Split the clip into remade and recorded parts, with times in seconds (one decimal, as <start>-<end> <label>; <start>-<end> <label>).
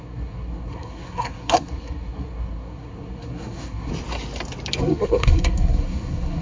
0.0-3.9 remade; 3.9-4.8 recorded; 4.8-6.4 remade